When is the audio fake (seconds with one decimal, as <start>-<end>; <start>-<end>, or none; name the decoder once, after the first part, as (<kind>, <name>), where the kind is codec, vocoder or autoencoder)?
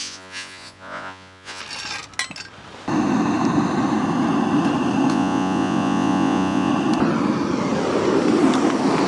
0.0-1.6 (vocoder, Vocos); 5.1-6.7